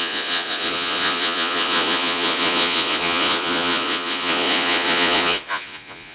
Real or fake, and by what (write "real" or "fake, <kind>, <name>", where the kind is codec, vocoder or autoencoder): fake, vocoder, Vocos